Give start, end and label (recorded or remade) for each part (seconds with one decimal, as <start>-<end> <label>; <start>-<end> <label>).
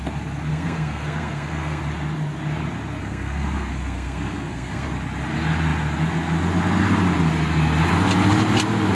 0.0-0.5 recorded; 0.5-1.8 remade; 1.8-3.0 recorded; 3.0-4.9 remade; 4.9-8.9 recorded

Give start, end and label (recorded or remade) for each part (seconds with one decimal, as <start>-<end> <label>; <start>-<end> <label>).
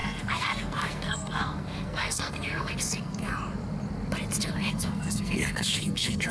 0.0-3.3 remade; 3.3-4.4 recorded; 4.4-6.3 remade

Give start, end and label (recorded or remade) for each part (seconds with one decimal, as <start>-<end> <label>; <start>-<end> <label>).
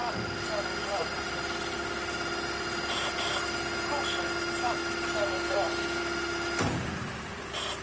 0.0-7.8 recorded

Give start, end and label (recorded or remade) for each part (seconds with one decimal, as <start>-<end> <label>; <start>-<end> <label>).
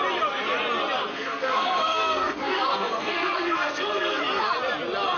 0.0-1.1 recorded; 1.1-4.2 remade; 4.2-5.2 recorded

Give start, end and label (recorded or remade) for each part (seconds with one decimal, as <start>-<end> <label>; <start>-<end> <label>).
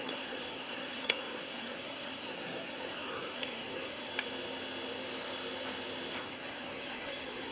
0.0-4.1 remade; 4.1-6.2 recorded; 6.2-7.5 remade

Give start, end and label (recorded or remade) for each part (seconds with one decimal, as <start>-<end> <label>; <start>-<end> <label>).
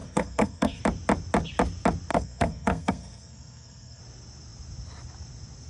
0.0-0.8 remade; 0.8-2.1 recorded; 2.1-4.0 remade; 4.0-5.7 recorded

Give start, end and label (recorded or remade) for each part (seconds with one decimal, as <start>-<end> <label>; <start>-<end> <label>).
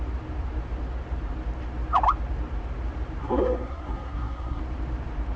0.0-3.2 recorded; 3.2-4.6 remade; 4.6-5.4 recorded